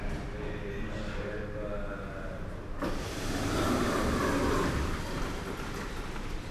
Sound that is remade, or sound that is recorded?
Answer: recorded